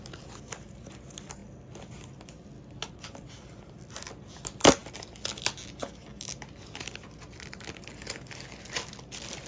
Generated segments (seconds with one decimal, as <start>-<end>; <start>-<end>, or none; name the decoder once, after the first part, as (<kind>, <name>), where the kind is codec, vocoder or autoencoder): none